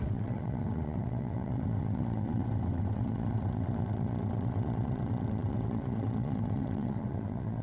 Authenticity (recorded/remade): remade